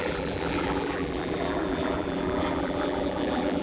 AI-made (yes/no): yes